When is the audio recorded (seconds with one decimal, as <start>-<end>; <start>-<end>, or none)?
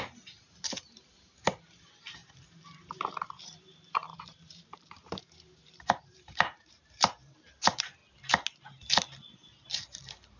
8.0-10.0